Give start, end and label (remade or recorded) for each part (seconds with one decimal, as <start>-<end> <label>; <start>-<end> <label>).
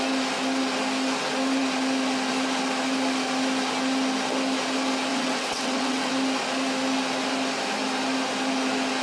0.0-5.1 recorded; 5.1-6.1 remade; 6.1-9.0 recorded